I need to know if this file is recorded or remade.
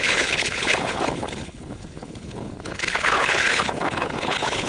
remade